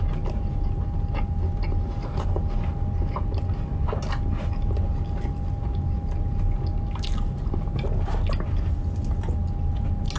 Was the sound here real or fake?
real